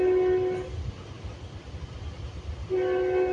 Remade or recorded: recorded